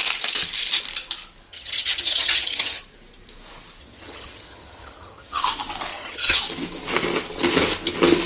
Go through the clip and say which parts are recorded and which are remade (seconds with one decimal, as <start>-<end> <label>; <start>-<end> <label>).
0.0-1.5 recorded; 1.5-2.8 remade; 2.8-3.8 recorded; 3.8-5.4 remade; 5.4-5.9 recorded; 5.9-6.4 remade; 6.4-8.3 recorded